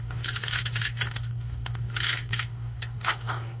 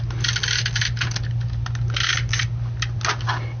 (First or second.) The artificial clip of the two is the first